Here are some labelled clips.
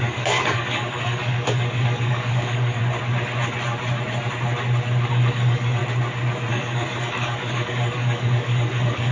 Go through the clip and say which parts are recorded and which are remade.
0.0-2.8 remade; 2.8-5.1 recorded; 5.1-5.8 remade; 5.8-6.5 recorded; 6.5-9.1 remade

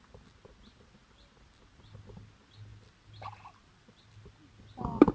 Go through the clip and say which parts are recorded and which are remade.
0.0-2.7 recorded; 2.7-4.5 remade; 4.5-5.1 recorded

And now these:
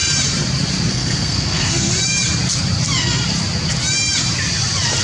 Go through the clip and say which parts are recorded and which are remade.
0.0-0.9 recorded; 0.9-1.9 remade; 1.9-5.0 recorded